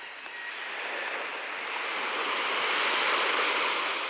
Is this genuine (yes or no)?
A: yes